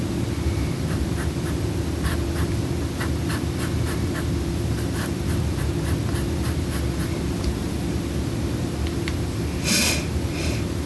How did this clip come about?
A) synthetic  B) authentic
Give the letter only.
A